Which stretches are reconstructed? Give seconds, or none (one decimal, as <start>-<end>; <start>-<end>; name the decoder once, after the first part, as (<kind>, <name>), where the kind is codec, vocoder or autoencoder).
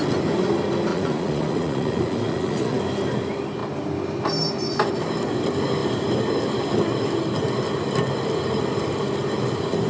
0.9-2.8 (vocoder, Vocos)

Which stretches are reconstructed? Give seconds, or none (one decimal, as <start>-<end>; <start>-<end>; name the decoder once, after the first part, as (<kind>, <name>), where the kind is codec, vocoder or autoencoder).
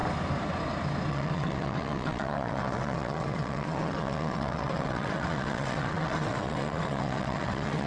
1.1-7.9 (vocoder, WaveNeXt)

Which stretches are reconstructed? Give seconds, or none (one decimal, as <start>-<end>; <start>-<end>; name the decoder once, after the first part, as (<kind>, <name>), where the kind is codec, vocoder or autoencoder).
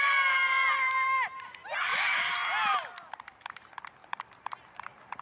0.0-1.9 (vocoder, BigVGAN v2); 3.5-5.2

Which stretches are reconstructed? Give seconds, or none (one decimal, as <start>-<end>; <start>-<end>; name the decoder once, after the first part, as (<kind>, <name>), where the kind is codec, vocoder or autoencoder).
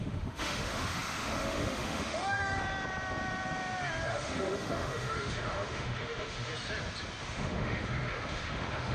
0.0-2.6 (autoencoder, DAC-VAE); 4.1-6.5; 7.2-8.9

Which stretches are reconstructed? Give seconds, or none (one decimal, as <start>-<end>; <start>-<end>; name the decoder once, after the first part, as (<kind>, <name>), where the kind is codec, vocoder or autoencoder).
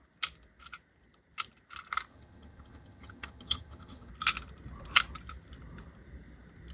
2.1-4.1 (vocoder, HiFi-GAN)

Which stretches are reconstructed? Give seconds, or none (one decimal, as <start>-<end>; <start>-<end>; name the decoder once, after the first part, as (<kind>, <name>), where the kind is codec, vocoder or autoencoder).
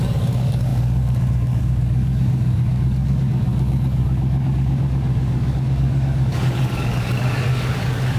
0.0-8.2 (codec, DAC)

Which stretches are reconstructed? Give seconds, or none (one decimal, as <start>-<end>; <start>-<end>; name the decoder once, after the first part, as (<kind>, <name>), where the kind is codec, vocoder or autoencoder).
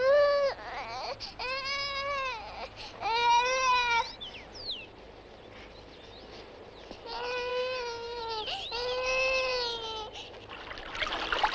7.5-8.2 (codec, DAC)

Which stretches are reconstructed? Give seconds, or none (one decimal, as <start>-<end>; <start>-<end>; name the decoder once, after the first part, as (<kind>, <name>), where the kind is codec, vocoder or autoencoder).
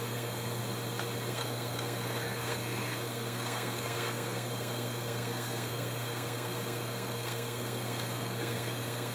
0.0-0.6 (codec, SNAC); 1.3-9.1